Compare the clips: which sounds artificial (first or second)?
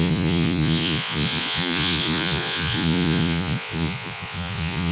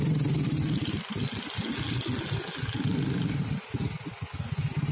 first